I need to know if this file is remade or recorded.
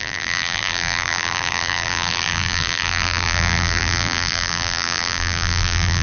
remade